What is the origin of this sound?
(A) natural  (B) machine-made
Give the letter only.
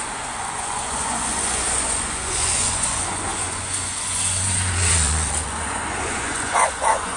B